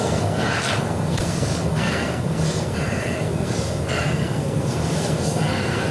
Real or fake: fake